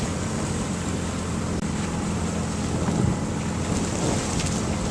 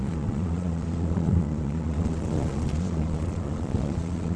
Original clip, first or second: first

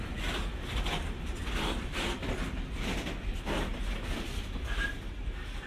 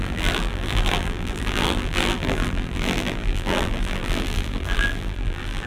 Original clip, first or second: first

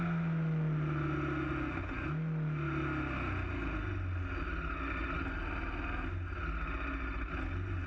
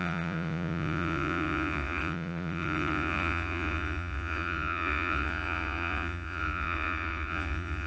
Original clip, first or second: first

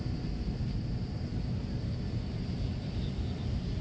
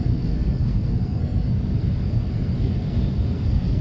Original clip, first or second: first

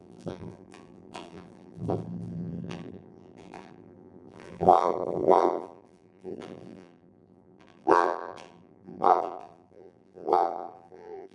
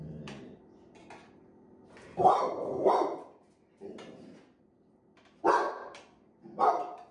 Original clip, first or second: second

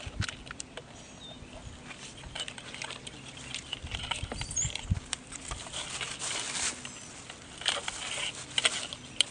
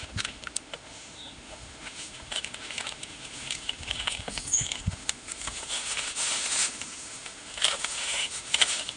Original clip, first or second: first